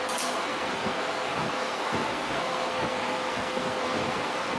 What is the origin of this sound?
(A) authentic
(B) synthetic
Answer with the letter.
B